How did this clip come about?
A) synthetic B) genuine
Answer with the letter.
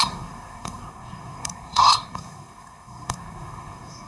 A